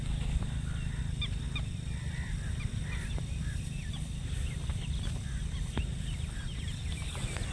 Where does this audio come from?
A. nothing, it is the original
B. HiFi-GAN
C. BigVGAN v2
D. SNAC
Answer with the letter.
A